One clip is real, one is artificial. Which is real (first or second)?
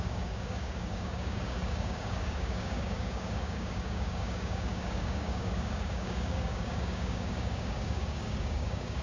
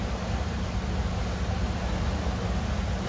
second